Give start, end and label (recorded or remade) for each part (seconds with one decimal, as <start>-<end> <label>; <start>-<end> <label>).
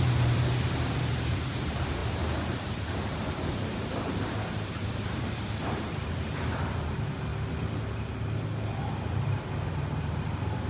0.0-7.3 remade; 7.3-8.8 recorded; 8.8-10.7 remade